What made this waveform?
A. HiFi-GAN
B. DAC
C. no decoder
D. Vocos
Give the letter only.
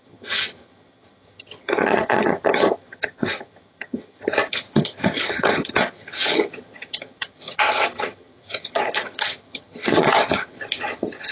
A